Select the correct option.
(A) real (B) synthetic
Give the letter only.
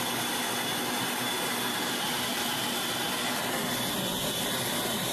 A